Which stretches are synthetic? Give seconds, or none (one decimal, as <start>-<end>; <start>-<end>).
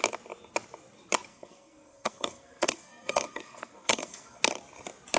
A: 1.3-4.4